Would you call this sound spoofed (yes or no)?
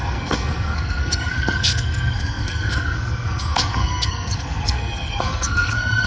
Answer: yes